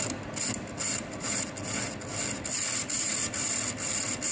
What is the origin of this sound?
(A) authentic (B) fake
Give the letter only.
A